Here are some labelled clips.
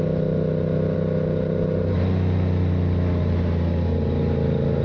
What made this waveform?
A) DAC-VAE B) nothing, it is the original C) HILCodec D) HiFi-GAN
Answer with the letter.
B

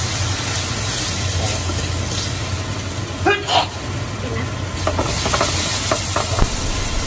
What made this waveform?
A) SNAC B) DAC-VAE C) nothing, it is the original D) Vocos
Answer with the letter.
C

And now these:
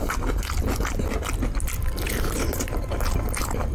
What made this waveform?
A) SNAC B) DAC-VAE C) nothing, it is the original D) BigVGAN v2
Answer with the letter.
C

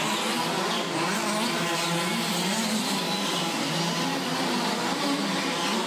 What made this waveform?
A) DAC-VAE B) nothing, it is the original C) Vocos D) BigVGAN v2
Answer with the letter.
B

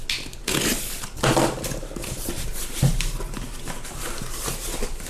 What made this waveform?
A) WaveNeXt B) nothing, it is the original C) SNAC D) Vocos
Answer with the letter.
B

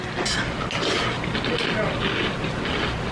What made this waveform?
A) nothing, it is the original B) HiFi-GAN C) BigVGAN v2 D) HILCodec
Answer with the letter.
A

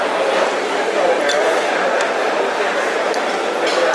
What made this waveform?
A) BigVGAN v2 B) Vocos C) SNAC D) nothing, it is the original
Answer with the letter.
D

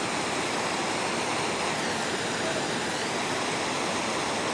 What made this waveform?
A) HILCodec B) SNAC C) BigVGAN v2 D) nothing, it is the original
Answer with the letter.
D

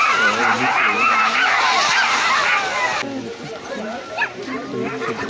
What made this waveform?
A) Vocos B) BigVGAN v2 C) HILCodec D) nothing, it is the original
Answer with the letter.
D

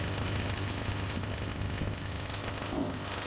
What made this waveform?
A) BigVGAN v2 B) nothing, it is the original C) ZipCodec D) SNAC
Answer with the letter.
C